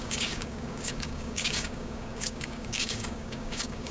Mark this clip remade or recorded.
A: remade